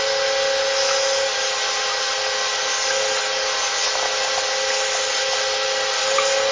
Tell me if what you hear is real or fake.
real